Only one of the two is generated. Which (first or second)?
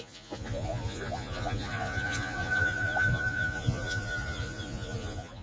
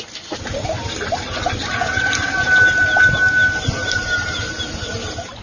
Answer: first